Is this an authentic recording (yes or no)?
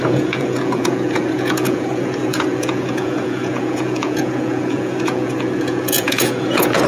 no